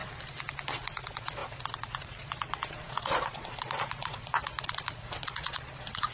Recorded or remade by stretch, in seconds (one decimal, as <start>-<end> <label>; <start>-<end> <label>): 0.0-0.7 recorded; 0.7-6.1 remade